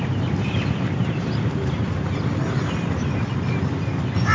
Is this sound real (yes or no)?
yes